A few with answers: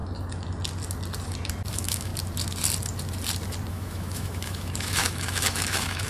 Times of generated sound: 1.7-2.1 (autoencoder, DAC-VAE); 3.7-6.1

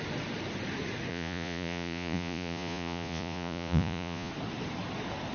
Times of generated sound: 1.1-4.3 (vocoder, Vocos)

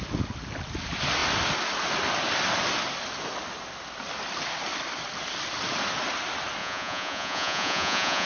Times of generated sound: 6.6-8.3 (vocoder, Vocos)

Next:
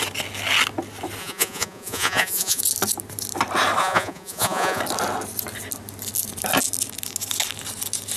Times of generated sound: 1.2-2.6 (vocoder, Vocos); 3.8-4.8

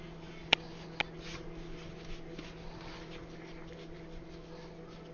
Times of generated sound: none